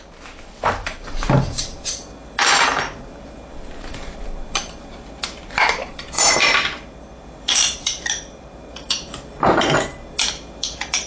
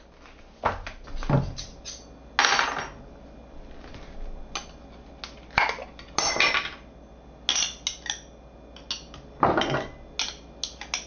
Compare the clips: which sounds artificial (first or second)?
first